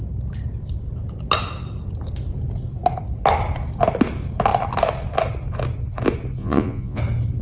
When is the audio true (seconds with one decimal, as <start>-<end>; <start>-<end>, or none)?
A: 0.0-6.4; 7.0-7.4